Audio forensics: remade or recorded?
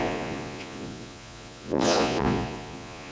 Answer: remade